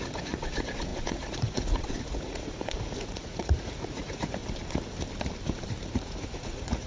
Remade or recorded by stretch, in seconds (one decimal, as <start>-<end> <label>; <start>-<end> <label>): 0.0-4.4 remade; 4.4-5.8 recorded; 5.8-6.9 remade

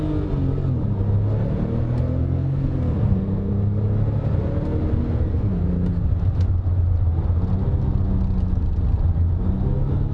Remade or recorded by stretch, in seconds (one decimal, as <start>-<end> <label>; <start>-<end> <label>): 0.0-2.2 recorded; 2.2-3.5 remade; 3.5-5.0 recorded; 5.0-5.6 remade; 5.6-10.1 recorded

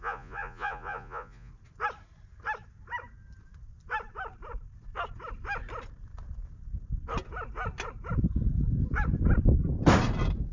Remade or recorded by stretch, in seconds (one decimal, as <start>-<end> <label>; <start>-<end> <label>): 0.0-1.5 remade; 1.5-10.5 recorded

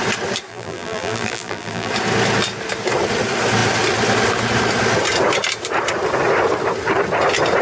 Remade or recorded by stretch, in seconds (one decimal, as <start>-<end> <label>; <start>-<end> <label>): 0.0-0.5 recorded; 0.5-1.9 remade; 1.9-7.6 recorded

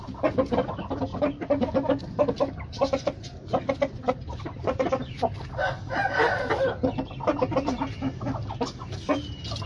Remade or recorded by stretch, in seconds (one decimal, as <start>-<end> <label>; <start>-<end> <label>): 0.0-9.7 recorded